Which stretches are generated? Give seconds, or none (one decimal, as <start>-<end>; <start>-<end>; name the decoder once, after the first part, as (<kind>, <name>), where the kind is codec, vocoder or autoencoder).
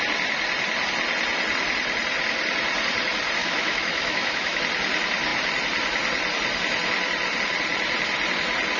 3.4-4.6 (autoencoder, DAC-VAE)